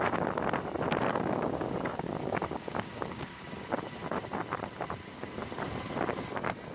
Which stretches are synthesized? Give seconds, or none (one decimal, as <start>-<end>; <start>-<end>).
1.1-3.4